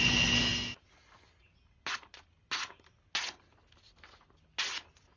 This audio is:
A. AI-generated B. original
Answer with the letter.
B